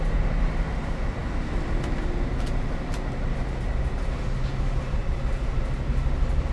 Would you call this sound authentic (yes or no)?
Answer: yes